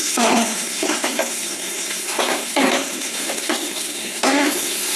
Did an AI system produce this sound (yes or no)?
yes